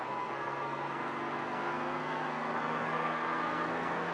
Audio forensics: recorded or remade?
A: remade